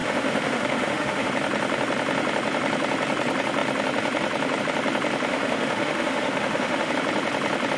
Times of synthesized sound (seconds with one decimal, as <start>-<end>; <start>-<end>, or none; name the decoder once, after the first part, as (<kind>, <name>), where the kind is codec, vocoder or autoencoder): 0.0-1.3 (autoencoder, DAC-VAE); 5.3-6.9